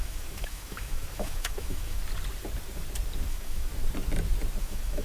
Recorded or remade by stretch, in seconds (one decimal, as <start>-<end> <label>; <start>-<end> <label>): 0.0-2.0 remade; 2.0-3.3 recorded; 3.3-3.7 remade; 3.7-4.6 recorded; 4.6-5.0 remade